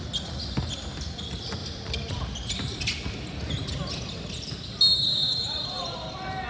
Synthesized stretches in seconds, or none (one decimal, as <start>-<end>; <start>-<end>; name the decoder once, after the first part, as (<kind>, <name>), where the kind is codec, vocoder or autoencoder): 1.6-2.8 (vocoder, BigVGAN v2); 5.2-5.8